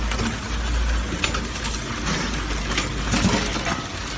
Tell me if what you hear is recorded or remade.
recorded